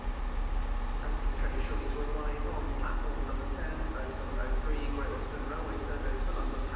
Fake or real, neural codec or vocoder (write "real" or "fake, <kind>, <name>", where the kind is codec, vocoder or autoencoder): real